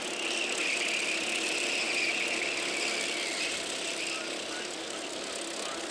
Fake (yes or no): no